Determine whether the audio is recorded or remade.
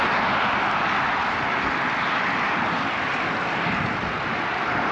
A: recorded